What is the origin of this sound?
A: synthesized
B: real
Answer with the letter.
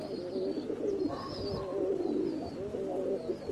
B